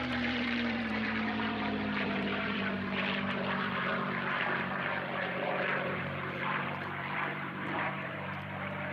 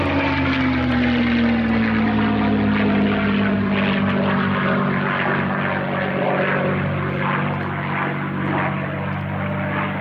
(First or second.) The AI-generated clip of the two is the first